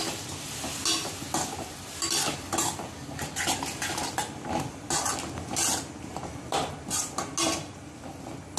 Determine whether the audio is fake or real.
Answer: real